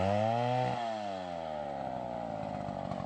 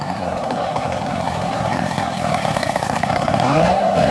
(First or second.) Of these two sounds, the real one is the first